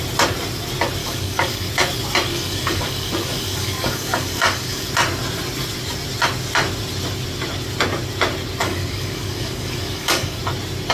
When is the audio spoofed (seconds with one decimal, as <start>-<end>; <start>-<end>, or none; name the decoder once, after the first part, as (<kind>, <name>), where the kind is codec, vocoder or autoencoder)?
1.0-1.7 (codec, DAC); 2.3-4.9; 8.6-10.4